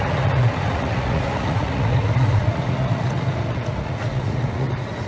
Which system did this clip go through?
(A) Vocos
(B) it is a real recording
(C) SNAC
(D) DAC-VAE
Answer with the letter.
A